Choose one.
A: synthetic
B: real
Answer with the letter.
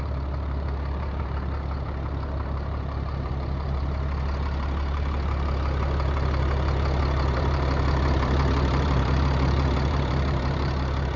A